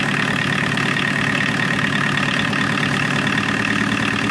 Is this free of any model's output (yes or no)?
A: yes